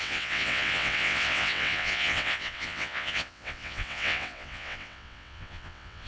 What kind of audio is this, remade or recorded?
remade